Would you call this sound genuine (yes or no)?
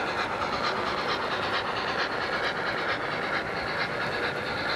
yes